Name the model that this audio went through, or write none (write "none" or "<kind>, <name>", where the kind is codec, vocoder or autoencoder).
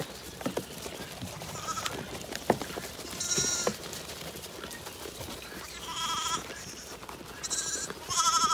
vocoder, BigVGAN v2